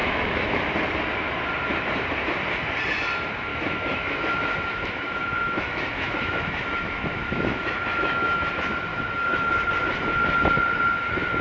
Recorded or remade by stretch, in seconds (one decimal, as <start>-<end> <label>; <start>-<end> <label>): 0.0-0.6 remade; 0.6-3.5 recorded; 3.5-8.5 remade; 8.5-8.9 recorded; 8.9-9.5 remade; 9.5-11.4 recorded